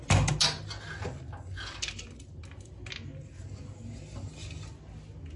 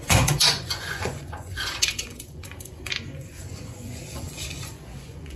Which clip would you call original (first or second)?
first